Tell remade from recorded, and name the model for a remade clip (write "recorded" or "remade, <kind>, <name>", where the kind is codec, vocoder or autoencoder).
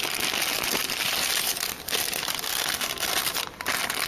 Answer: recorded